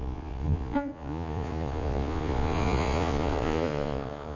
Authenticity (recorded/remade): remade